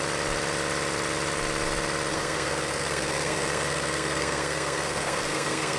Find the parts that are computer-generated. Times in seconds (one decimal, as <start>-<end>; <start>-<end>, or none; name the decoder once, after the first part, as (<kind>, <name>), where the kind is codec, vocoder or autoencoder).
2.1-5.8 (codec, SNAC)